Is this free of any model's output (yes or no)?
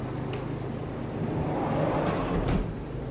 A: yes